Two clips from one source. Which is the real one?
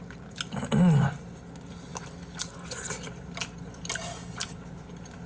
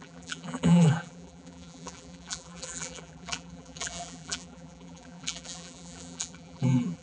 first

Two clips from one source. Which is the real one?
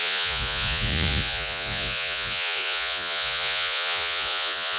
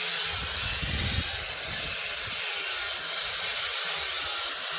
second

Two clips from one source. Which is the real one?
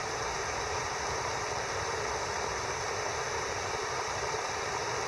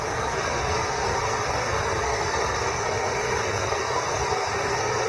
first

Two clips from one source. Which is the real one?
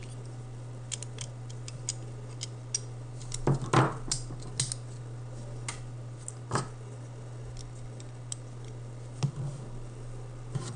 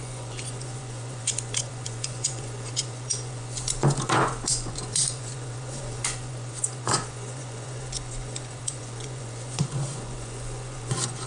first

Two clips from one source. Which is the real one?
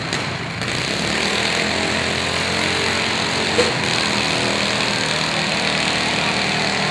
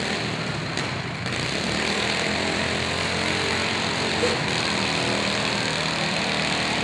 first